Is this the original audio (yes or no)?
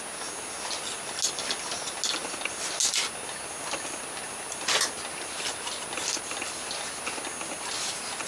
yes